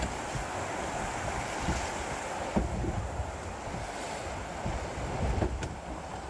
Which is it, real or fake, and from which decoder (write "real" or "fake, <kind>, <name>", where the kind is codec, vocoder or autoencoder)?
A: real